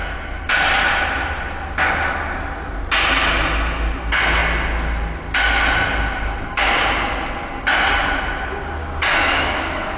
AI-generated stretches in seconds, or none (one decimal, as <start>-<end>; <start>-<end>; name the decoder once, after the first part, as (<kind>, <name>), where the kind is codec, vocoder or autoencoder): 8.8-10.0 (codec, DAC)